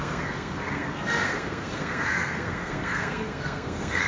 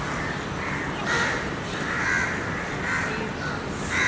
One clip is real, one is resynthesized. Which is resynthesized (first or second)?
first